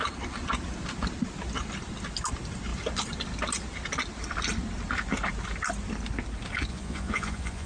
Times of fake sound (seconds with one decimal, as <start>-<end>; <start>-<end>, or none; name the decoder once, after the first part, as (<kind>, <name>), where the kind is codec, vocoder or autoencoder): 6.7-7.7 (vocoder, Vocos)